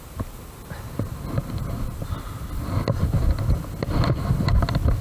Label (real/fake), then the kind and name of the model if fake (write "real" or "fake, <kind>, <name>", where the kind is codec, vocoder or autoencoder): real